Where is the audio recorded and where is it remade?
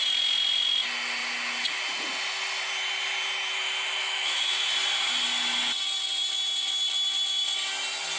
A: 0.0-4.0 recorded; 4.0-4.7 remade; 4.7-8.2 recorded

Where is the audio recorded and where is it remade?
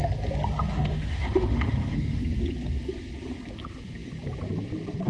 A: 0.0-0.7 recorded; 0.7-2.2 remade; 2.2-5.1 recorded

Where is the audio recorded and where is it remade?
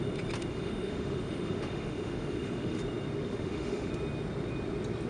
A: 0.0-0.5 recorded; 0.5-2.8 remade; 2.8-3.2 recorded; 3.2-3.9 remade; 3.9-5.1 recorded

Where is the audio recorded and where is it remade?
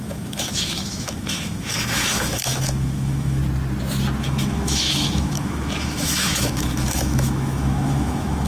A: 0.0-3.4 remade; 3.4-4.2 recorded; 4.2-8.5 remade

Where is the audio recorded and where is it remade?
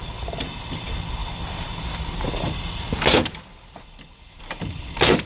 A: 0.0-5.3 recorded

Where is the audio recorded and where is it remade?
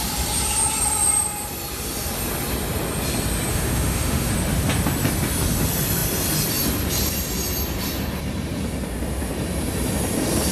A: 0.0-3.5 recorded; 3.5-4.3 remade; 4.3-10.5 recorded